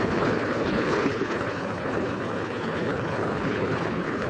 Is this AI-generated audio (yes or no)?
yes